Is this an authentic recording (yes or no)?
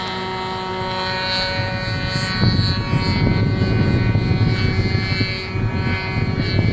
yes